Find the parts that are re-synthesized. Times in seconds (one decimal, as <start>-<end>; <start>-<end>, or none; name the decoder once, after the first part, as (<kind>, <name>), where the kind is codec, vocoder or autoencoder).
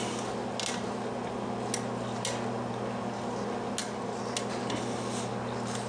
none